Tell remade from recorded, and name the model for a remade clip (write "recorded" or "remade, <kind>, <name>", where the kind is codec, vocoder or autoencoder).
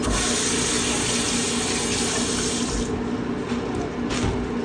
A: recorded